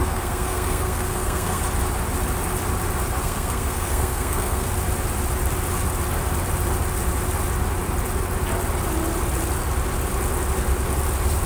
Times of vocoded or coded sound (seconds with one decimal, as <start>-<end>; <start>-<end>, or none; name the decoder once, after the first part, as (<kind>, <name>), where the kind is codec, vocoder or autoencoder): 0.0-1.6 (codec, SNAC); 3.2-4.7